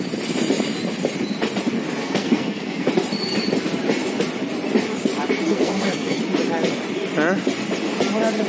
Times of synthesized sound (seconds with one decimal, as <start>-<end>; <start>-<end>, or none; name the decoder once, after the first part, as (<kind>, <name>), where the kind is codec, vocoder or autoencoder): 2.0-2.9 (codec, SNAC); 5.5-6.2